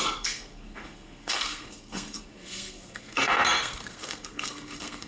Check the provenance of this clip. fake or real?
fake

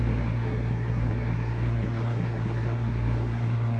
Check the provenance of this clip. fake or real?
fake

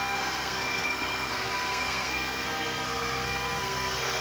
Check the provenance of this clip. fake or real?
fake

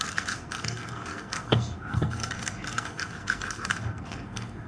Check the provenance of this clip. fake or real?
fake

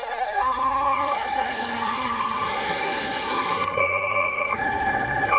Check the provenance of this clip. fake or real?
fake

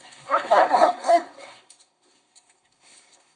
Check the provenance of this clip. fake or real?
fake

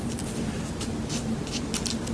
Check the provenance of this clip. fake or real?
real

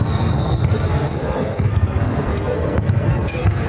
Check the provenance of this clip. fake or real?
fake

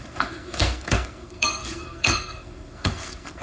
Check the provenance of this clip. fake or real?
fake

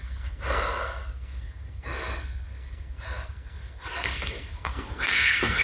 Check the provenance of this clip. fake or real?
fake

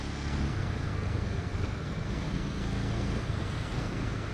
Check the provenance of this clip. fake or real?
fake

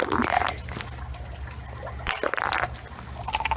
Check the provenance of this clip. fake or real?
real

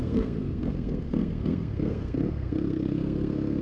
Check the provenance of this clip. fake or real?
fake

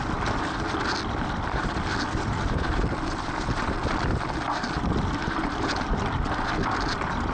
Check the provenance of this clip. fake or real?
real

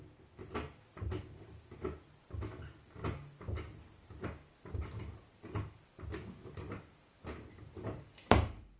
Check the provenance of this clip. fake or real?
real